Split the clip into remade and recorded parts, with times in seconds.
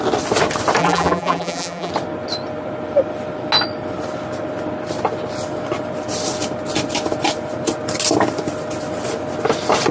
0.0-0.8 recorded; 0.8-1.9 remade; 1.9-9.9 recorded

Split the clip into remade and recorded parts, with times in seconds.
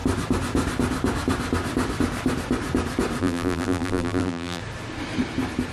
0.0-3.2 recorded; 3.2-4.6 remade; 4.6-5.7 recorded